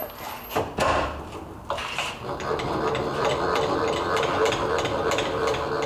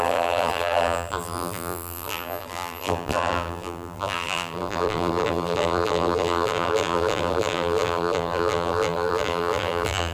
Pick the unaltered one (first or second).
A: first